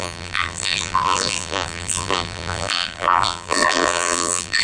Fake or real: fake